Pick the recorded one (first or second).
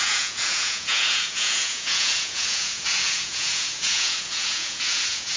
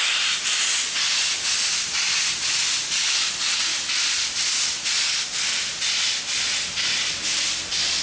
second